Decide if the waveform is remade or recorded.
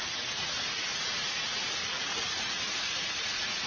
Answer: remade